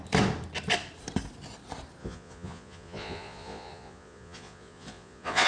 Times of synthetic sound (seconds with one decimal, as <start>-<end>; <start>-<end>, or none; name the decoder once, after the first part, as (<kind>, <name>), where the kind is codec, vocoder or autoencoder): 2.0-5.5 (vocoder, Vocos)